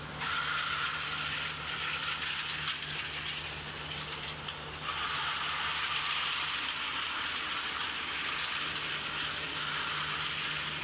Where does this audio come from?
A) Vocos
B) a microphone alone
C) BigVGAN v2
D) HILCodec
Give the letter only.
B